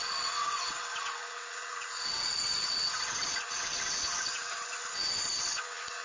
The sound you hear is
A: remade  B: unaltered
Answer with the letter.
A